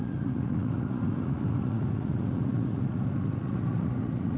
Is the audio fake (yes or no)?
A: yes